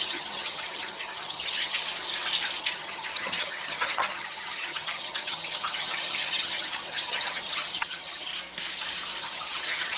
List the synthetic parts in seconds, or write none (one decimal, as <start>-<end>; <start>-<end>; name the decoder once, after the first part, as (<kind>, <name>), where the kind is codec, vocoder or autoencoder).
0.0-1.9 (vocoder, HiFi-GAN); 2.6-8.3; 9.2-10.0